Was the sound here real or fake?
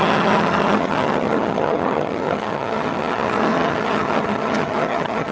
fake